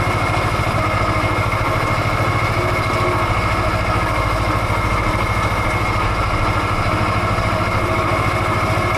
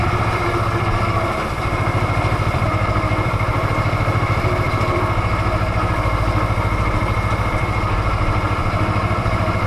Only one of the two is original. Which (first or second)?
first